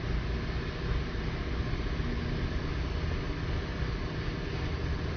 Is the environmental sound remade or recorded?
recorded